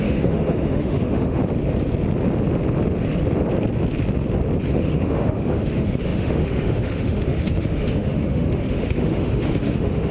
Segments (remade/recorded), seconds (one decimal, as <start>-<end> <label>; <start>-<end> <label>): 0.0-1.4 remade; 1.4-4.6 recorded; 4.6-10.1 remade